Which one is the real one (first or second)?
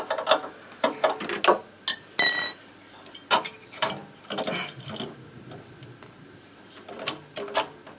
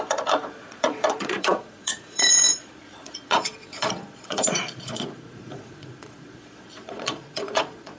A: first